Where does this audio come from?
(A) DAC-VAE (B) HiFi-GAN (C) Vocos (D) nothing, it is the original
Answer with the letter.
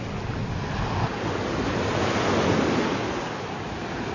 D